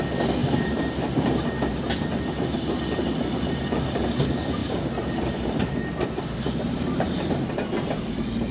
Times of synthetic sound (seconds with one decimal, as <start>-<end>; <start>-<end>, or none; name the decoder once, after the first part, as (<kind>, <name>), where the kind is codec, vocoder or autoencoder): 0.4-1.2 (vocoder, BigVGAN v2); 4.6-7.7